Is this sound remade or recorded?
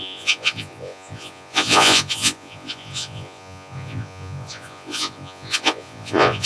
remade